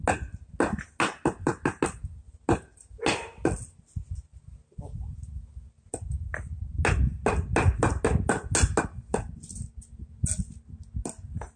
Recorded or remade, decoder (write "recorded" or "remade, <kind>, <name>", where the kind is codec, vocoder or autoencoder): recorded